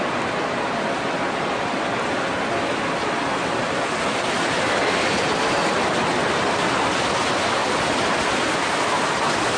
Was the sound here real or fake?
real